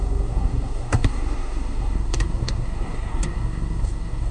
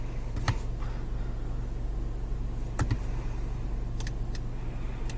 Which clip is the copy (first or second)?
first